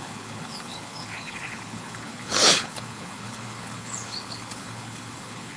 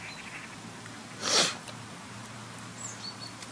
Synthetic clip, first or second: first